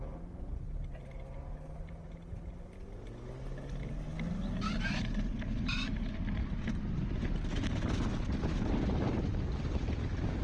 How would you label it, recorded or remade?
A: recorded